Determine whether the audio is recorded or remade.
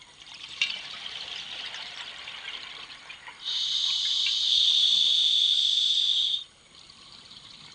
remade